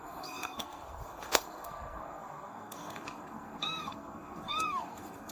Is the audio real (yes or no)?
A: no